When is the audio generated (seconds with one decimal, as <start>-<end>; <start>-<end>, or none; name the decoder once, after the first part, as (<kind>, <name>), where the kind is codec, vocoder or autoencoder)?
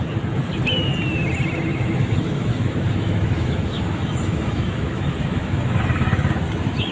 1.7-5.8 (autoencoder, DAC-VAE)